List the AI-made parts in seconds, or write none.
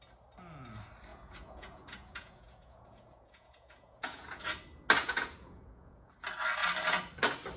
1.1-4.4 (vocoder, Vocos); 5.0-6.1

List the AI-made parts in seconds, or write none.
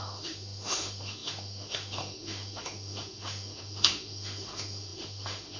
0.0-5.6 (autoencoder, DAC-VAE)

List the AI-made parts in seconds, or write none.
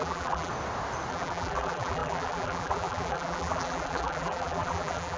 0.0-0.5 (vocoder, BigVGAN v2); 1.1-5.2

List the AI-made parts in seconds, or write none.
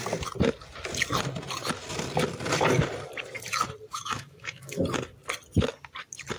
3.9-4.8 (autoencoder, DAC-VAE)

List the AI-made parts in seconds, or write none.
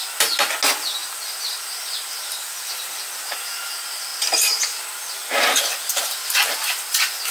none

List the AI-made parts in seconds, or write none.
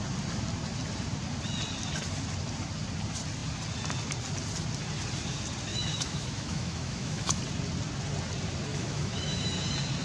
5.7-7.4 (autoencoder, DAC-VAE); 8.7-9.4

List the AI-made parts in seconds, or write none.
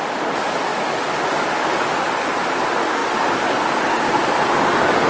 none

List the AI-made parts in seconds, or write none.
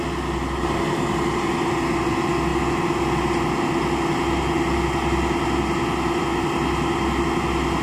none